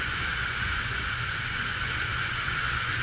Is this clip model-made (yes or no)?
yes